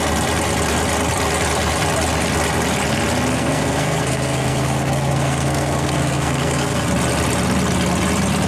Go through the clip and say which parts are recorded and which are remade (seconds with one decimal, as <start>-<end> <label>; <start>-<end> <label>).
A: 0.0-3.3 recorded; 3.3-6.9 remade; 6.9-8.5 recorded